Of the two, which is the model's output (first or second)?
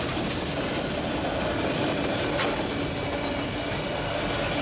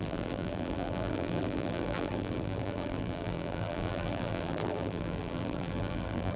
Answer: second